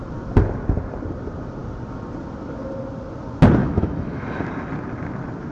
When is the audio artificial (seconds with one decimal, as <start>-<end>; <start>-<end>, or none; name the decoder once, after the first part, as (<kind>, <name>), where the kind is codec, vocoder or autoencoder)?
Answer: 3.6-4.4 (autoencoder, DAC-VAE)